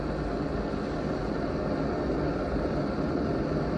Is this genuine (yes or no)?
yes